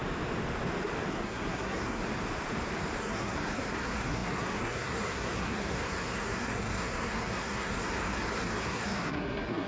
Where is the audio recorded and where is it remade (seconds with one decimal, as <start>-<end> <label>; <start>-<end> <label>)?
0.0-1.1 recorded; 1.1-2.0 remade; 2.0-3.0 recorded; 3.0-9.7 remade